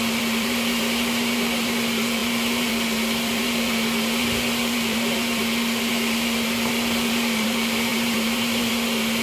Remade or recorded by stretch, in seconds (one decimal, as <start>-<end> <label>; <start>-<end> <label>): 0.0-9.2 remade